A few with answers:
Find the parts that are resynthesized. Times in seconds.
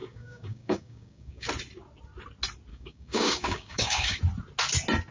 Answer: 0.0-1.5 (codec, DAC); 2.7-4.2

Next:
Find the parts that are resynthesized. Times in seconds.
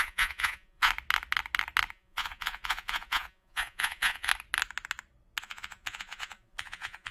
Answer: 0.0-0.9 (vocoder, Vocos); 1.9-4.3; 5.4-7.1